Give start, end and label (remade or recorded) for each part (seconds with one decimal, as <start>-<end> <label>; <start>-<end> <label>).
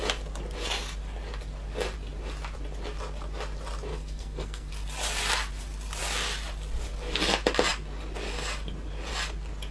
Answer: 0.0-3.9 recorded; 3.9-4.7 remade; 4.7-9.7 recorded